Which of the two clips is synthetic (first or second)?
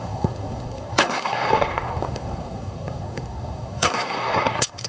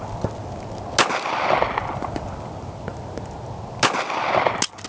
first